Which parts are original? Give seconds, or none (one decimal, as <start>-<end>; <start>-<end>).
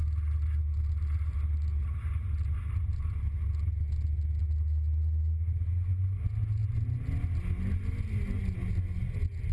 0.0-9.5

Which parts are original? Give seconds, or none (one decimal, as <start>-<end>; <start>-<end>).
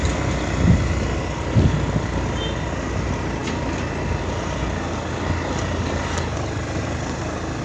0.0-7.6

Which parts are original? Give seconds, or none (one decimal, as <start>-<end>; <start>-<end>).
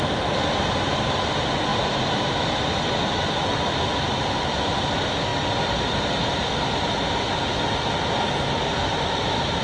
0.0-9.6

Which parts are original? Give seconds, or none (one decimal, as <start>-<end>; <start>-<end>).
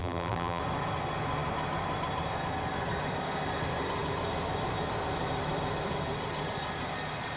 0.6-7.4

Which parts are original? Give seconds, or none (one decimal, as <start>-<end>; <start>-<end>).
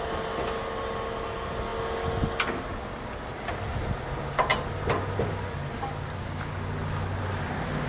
0.0-7.9